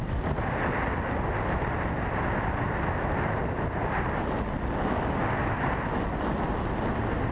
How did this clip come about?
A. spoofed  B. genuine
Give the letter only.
B